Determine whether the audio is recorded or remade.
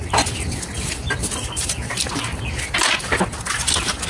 recorded